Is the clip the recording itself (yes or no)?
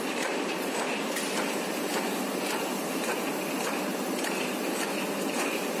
yes